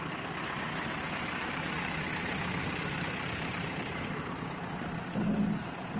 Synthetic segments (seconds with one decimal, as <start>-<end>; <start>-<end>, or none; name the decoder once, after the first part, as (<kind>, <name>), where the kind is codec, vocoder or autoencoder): 0.7-4.0 (vocoder, BigVGAN v2)